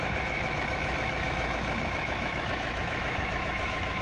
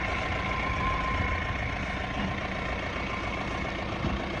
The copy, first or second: first